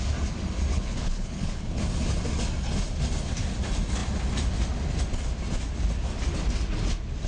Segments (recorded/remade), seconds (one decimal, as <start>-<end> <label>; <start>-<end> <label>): 0.0-0.7 recorded; 0.7-1.8 remade; 1.8-7.3 recorded